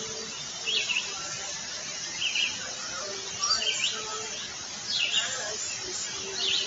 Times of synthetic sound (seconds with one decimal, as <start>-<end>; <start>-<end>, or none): none